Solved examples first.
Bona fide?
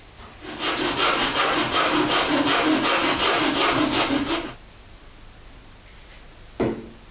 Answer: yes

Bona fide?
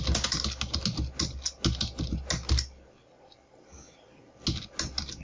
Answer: yes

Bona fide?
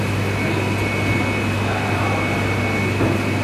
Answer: yes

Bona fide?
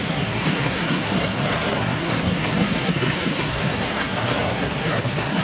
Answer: no